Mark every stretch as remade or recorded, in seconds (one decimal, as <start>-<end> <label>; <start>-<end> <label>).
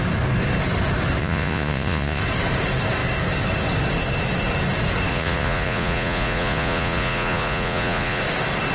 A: 0.0-1.2 recorded; 1.2-2.2 remade; 2.2-5.1 recorded; 5.1-8.2 remade; 8.2-8.7 recorded